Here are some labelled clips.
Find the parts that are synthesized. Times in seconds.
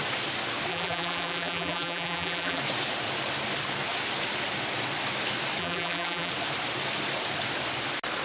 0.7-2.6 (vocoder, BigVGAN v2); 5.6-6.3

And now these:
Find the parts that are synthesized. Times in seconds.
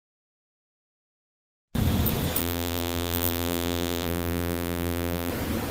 2.4-5.3 (vocoder, BigVGAN v2)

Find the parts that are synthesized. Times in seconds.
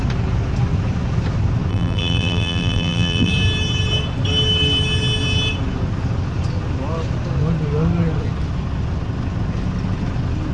1.7-3.3 (vocoder, BigVGAN v2)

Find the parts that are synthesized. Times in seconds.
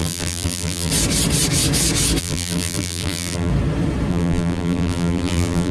0.0-0.9 (vocoder, BigVGAN v2); 2.2-3.5; 4.1-5.7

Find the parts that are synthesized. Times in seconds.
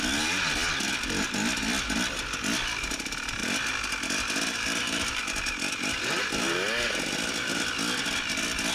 3.4-5.2 (vocoder, BigVGAN v2)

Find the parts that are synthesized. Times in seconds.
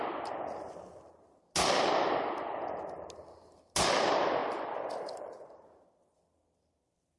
4.0-7.2 (vocoder, BigVGAN v2)